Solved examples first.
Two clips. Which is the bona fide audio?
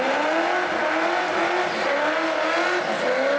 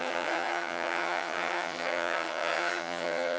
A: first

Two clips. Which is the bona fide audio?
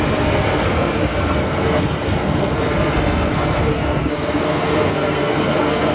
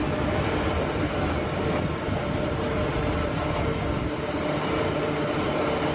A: second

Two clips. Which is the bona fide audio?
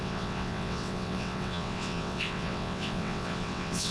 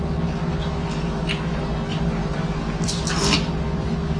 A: second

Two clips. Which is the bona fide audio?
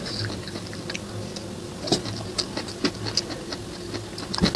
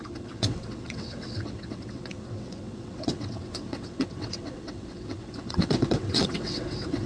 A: first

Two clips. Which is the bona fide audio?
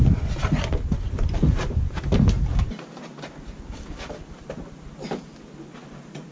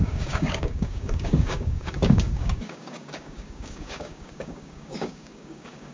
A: first